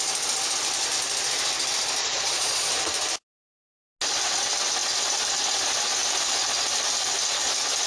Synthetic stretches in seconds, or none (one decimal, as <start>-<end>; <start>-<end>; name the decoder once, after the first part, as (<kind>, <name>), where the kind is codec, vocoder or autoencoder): 2.0-2.7 (vocoder, Vocos)